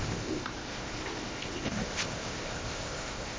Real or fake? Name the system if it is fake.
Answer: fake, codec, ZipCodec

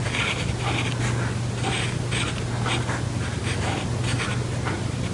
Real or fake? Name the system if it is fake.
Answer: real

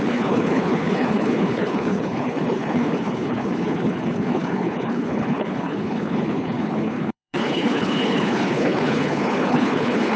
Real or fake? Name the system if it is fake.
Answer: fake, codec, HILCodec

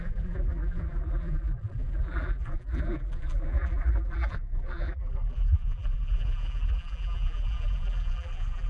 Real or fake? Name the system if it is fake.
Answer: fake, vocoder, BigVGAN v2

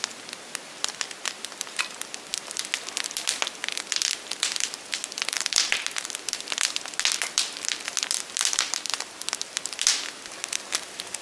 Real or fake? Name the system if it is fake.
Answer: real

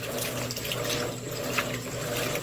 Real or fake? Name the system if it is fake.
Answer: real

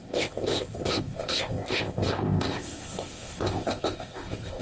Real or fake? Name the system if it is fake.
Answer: fake, codec, ZipCodec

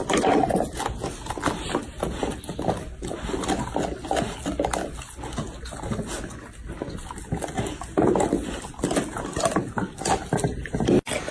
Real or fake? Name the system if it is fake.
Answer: real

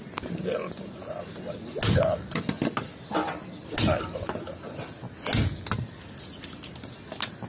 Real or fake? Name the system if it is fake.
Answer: real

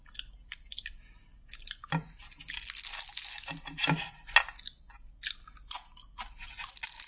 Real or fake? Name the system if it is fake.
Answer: real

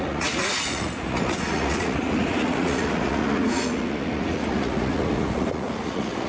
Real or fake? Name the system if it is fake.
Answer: fake, vocoder, Vocos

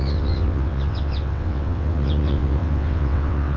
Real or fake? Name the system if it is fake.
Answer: fake, vocoder, WaveNeXt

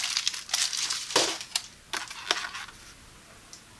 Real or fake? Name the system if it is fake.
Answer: real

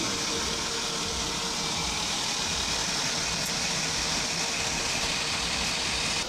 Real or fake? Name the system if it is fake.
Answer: real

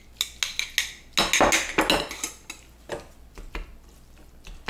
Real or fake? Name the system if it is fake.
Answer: real